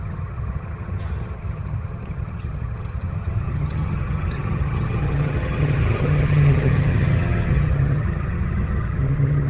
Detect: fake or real fake